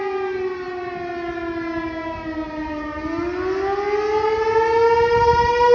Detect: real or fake real